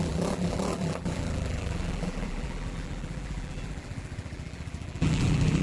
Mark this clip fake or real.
fake